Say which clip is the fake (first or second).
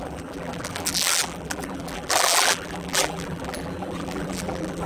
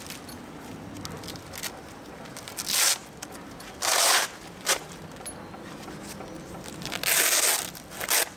first